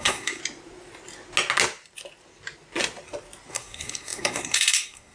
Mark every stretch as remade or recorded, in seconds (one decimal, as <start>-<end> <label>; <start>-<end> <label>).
0.0-0.4 remade; 0.4-3.5 recorded; 3.5-5.1 remade